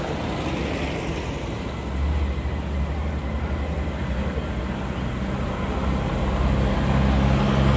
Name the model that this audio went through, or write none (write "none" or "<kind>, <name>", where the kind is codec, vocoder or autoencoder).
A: none